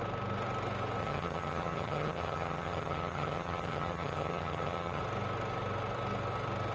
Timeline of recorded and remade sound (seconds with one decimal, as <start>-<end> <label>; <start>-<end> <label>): 0.0-1.0 recorded; 1.0-5.0 remade; 5.0-6.7 recorded